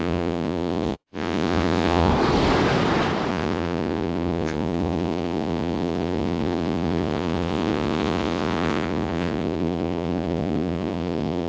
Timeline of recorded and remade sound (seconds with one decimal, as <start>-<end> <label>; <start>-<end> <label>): 0.0-2.1 remade; 2.1-3.3 recorded; 3.3-11.5 remade